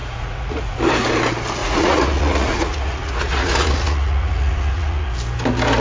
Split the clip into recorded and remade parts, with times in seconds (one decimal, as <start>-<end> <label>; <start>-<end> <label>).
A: 0.0-0.8 remade; 0.8-1.6 recorded; 1.6-5.1 remade; 5.1-5.8 recorded